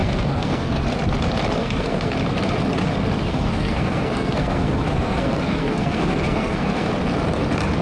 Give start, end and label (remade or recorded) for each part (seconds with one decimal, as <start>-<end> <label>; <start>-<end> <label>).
0.0-0.8 remade; 0.8-1.6 recorded; 1.6-2.1 remade; 2.1-3.3 recorded; 3.3-6.9 remade; 6.9-7.8 recorded